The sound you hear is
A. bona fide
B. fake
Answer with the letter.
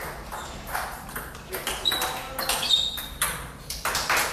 A